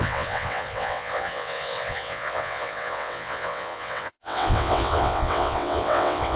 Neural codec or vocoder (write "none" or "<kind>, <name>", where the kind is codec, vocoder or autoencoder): vocoder, WaveNeXt